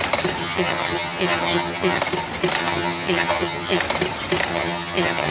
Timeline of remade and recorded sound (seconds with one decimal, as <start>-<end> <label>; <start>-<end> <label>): 0.0-0.4 recorded; 0.4-2.0 remade; 2.0-2.6 recorded; 2.6-3.8 remade; 3.8-4.5 recorded; 4.5-5.3 remade